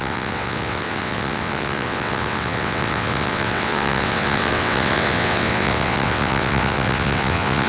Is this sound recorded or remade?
remade